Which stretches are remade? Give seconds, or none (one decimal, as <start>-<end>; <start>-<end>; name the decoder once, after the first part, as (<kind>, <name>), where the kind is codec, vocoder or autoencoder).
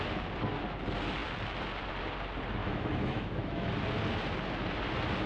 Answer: 2.6-3.7 (autoencoder, DAC-VAE)